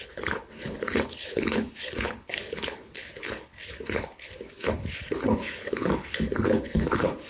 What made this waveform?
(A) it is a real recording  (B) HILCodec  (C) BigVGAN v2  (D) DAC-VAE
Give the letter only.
B